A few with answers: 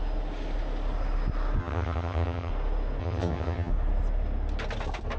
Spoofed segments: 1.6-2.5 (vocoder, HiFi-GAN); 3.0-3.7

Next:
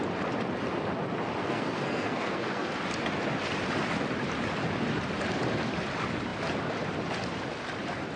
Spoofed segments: 1.4-2.7 (codec, SNAC)

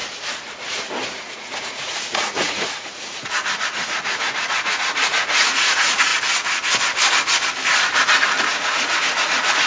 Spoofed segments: 0.6-6.1 (vocoder, Vocos); 8.4-9.7

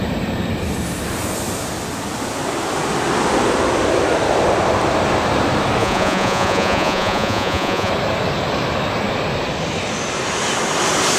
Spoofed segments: 5.8-7.9 (vocoder, Vocos)